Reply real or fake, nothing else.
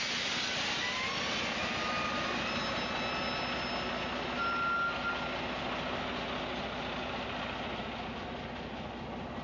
real